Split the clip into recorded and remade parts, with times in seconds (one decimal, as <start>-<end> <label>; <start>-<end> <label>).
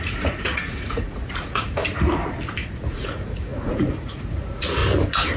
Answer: 0.0-1.8 remade; 1.8-2.9 recorded; 2.9-4.8 remade; 4.8-5.4 recorded